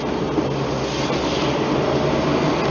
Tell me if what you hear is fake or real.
real